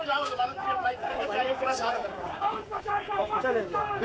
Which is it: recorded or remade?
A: remade